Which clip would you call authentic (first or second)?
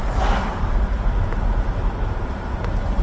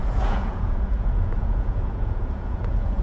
first